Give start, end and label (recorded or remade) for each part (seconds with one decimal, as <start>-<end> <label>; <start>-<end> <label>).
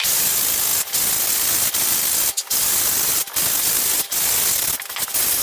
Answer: 0.0-5.4 recorded